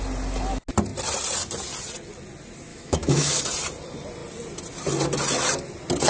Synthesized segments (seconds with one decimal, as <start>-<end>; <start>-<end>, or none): 2.7-3.4